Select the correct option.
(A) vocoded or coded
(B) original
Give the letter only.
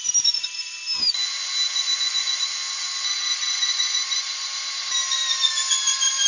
B